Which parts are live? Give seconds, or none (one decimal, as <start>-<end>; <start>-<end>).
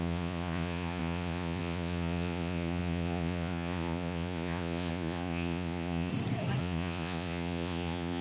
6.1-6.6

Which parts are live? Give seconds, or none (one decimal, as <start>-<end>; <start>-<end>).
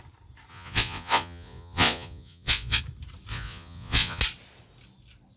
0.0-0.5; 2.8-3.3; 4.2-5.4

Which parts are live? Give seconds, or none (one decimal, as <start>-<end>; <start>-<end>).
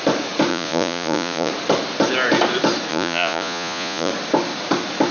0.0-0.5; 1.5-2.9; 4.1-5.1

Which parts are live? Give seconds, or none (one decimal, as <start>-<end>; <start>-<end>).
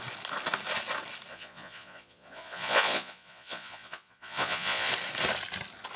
0.0-1.3; 4.9-6.0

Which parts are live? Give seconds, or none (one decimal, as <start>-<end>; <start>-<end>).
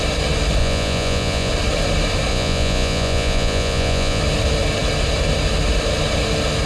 0.0-0.6; 1.5-2.3; 4.2-6.7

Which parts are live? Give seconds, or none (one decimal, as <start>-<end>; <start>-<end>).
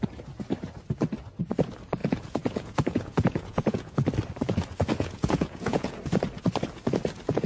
0.0-2.0; 4.1-4.9; 5.9-7.5